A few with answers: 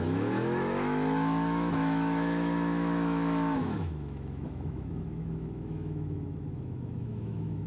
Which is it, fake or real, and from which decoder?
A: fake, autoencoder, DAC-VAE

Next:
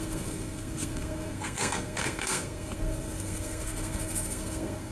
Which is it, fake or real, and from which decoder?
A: fake, codec, SNAC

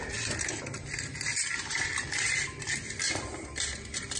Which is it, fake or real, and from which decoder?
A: real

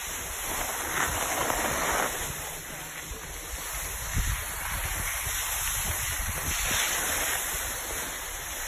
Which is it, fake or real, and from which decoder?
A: real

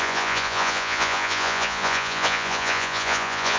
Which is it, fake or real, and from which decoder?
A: fake, vocoder, Vocos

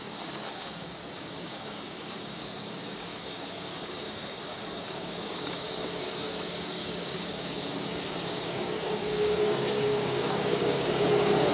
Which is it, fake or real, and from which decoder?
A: fake, codec, DAC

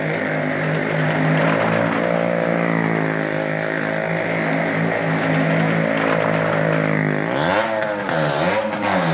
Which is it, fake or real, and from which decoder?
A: real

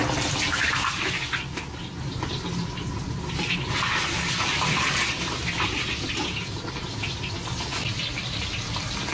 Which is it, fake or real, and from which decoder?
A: real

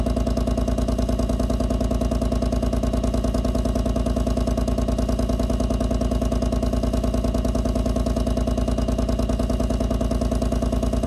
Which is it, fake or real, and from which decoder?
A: real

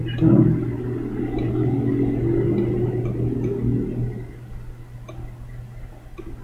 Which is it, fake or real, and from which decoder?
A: real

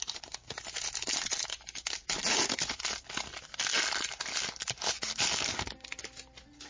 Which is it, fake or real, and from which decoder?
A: real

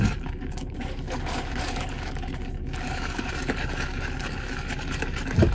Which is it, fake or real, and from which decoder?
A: fake, codec, DAC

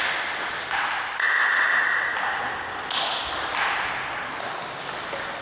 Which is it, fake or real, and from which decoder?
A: real